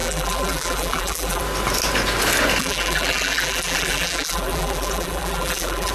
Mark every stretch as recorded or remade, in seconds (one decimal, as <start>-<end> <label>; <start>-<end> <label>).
0.0-1.4 remade; 1.4-2.6 recorded; 2.6-5.9 remade

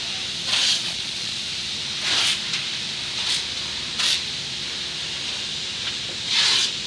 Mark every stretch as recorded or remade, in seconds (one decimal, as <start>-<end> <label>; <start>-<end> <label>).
0.0-0.6 recorded; 0.6-1.4 remade; 1.4-6.9 recorded

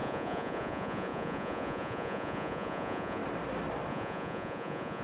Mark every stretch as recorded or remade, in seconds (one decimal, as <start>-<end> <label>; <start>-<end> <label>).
0.0-3.2 remade; 3.2-3.9 recorded; 3.9-5.0 remade

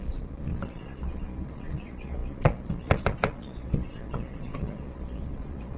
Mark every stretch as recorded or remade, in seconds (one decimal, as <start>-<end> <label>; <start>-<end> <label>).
0.0-5.8 remade

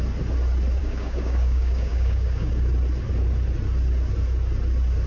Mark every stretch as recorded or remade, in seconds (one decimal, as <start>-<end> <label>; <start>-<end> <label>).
0.0-0.8 recorded; 0.8-2.5 remade; 2.5-5.1 recorded

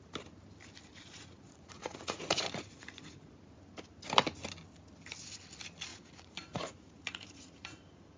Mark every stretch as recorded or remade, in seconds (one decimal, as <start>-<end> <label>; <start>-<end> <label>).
0.0-0.9 recorded; 0.9-3.3 remade; 3.3-5.9 recorded; 5.9-8.2 remade

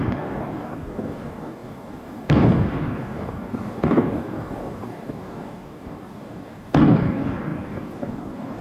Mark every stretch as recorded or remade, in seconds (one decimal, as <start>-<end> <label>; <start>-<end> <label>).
0.0-8.6 remade